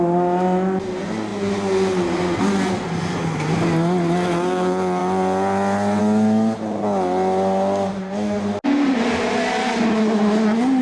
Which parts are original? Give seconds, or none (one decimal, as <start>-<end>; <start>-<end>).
0.0-7.9; 8.4-10.8